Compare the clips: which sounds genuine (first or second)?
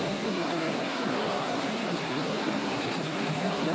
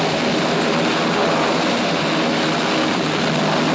second